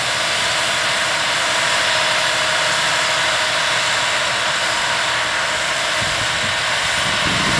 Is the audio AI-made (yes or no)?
no